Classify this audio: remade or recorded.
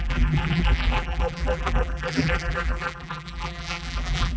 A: remade